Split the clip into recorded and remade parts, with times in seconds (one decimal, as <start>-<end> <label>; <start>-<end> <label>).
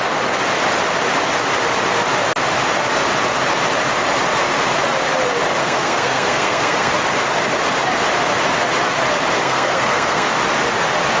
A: 0.0-5.6 recorded; 5.6-6.9 remade; 6.9-9.4 recorded; 9.4-10.3 remade; 10.3-11.2 recorded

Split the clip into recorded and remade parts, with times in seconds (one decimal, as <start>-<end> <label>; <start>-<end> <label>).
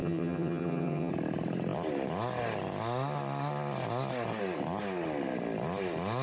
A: 0.0-1.1 remade; 1.1-6.2 recorded